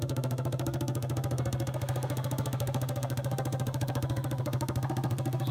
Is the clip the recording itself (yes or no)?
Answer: no